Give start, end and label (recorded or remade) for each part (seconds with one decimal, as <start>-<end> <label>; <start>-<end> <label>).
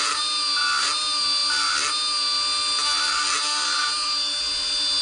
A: 0.0-5.0 recorded